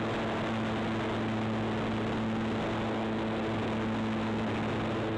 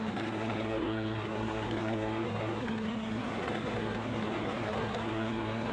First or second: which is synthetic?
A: second